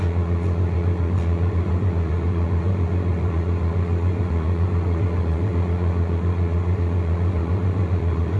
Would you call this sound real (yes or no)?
no